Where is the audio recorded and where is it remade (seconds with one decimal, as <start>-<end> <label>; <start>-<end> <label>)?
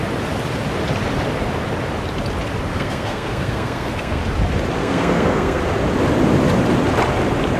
0.0-2.7 recorded; 2.7-4.2 remade; 4.2-4.8 recorded; 4.8-5.6 remade; 5.6-7.6 recorded